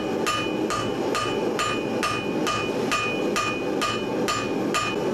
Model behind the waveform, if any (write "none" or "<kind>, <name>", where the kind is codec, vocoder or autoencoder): none